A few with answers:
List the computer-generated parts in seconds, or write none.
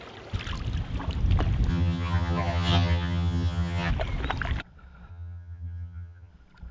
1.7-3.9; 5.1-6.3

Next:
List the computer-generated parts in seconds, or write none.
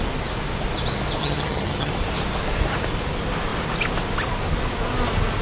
1.2-1.9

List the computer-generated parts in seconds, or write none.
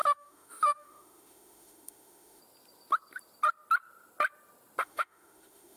0.0-2.4; 4.8-5.8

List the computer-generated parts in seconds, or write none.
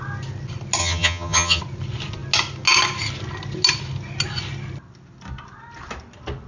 0.8-1.6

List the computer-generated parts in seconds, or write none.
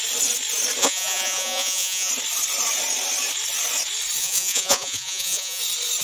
0.8-2.1; 4.2-5.6